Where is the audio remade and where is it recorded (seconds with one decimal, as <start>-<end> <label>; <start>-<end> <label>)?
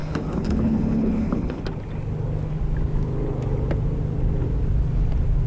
0.0-1.6 remade; 1.6-5.5 recorded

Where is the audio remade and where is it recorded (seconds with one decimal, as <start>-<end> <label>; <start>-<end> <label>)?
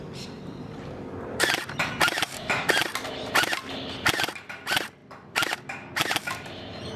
0.0-7.0 remade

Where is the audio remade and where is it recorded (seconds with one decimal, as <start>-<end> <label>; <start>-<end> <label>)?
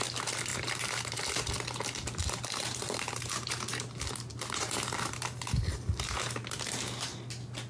0.0-0.5 recorded; 0.5-1.5 remade; 1.5-2.2 recorded; 2.2-3.6 remade; 3.6-4.3 recorded; 4.3-7.0 remade; 7.0-7.7 recorded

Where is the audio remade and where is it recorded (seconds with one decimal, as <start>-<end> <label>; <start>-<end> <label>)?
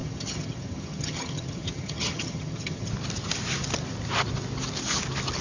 0.0-2.9 remade; 2.9-5.4 recorded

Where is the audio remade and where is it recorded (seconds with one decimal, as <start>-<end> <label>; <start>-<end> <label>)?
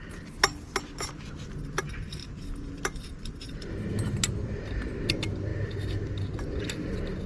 0.0-2.2 recorded; 2.2-3.7 remade; 3.7-7.3 recorded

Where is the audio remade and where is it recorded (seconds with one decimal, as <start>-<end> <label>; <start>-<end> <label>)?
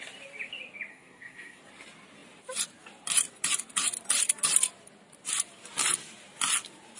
0.0-0.9 recorded; 0.9-1.6 remade; 1.6-7.0 recorded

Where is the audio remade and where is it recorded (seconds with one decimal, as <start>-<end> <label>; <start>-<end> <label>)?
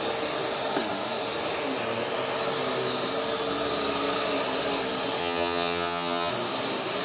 0.0-5.2 recorded; 5.2-6.3 remade; 6.3-7.0 recorded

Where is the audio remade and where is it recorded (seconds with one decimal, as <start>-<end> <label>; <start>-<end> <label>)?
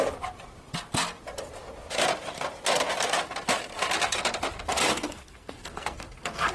0.0-4.9 recorded; 4.9-6.5 remade